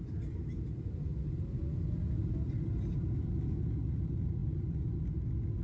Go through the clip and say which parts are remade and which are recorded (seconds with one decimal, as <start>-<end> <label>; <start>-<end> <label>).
0.0-5.6 recorded